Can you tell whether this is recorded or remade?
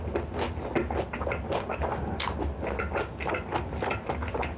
recorded